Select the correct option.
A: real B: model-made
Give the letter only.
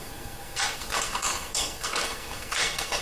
B